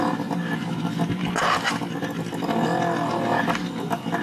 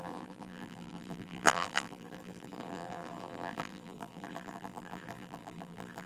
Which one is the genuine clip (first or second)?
first